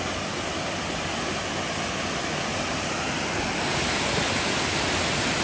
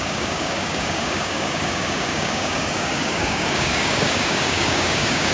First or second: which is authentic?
first